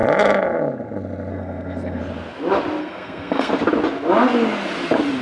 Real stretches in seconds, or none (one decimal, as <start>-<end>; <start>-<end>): 0.0-1.3; 2.0-2.8; 3.5-5.2